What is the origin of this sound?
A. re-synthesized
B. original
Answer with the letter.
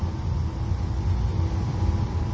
B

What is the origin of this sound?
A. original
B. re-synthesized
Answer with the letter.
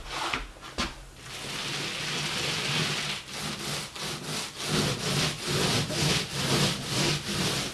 A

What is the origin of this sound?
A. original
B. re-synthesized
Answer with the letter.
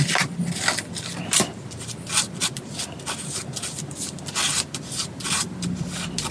A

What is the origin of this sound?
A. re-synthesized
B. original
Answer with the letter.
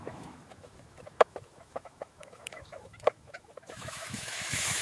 A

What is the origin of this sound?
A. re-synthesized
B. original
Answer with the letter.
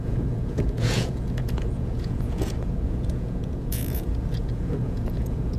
A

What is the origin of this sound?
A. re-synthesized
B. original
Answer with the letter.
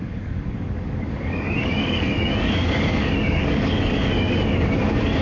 A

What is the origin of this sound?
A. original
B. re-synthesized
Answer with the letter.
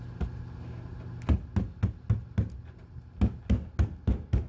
A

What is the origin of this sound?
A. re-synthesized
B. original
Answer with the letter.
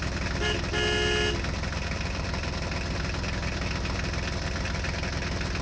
B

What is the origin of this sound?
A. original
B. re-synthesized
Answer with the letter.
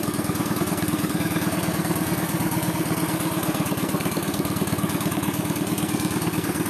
B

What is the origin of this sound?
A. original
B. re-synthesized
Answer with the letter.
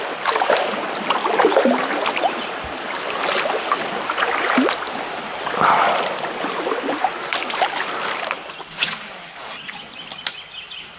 A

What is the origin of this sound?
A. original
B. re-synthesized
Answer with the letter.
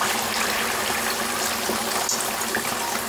A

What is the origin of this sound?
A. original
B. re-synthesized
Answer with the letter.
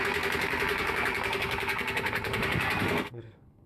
B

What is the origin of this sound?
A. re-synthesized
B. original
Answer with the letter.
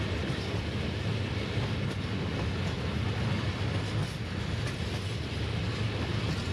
B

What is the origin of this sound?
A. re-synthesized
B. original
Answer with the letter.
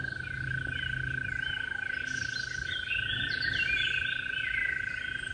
B